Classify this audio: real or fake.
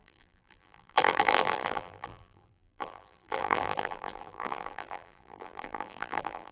fake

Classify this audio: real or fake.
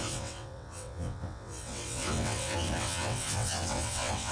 fake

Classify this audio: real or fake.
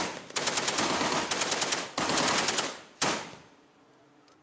real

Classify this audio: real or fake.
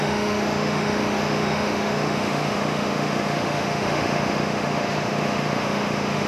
fake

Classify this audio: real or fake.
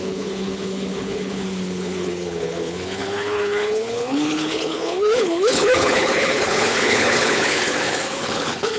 fake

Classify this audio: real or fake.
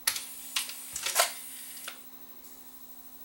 real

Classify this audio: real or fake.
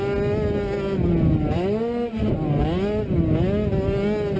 real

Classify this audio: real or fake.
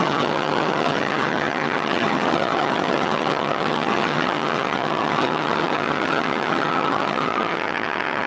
fake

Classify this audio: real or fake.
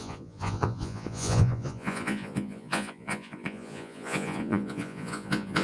fake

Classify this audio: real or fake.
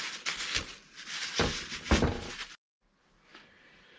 real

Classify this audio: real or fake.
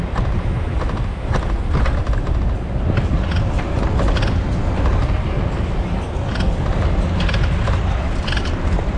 real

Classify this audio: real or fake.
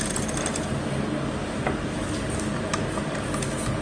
real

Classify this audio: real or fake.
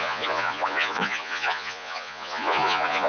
fake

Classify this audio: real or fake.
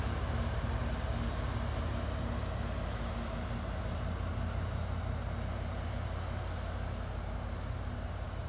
real